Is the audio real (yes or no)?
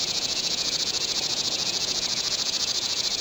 no